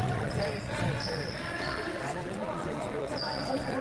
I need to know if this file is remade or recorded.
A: remade